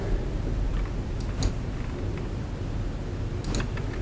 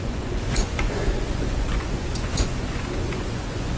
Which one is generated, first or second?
second